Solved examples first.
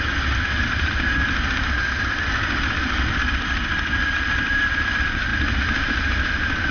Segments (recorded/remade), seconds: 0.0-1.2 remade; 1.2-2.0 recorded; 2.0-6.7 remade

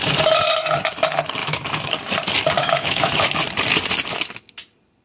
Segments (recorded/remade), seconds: 0.0-1.4 recorded; 1.4-1.9 remade; 1.9-2.6 recorded; 2.6-3.3 remade; 3.3-5.0 recorded